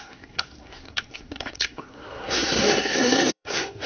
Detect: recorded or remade remade